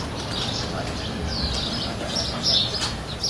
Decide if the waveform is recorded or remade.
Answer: recorded